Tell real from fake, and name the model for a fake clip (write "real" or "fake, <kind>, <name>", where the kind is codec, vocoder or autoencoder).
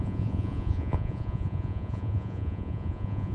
fake, vocoder, Vocos